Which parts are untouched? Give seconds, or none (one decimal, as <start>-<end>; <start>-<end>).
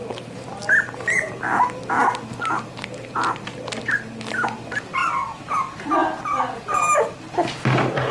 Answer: 0.0-8.1